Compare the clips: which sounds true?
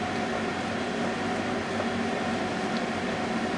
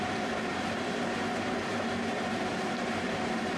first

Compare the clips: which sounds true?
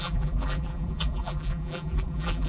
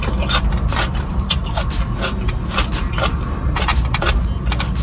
second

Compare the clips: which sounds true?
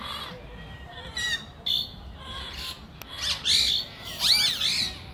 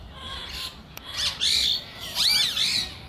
first